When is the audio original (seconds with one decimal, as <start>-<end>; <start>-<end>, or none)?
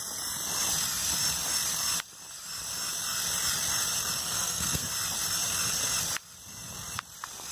0.0-4.2; 4.9-7.5